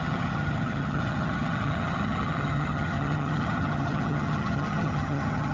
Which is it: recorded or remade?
remade